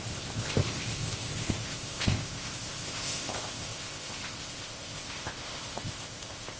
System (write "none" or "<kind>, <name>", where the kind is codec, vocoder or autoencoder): codec, ZipCodec